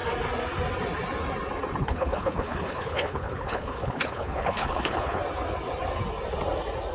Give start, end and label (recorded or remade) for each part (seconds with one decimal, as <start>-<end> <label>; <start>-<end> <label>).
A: 0.0-1.8 recorded; 1.8-5.2 remade; 5.2-6.9 recorded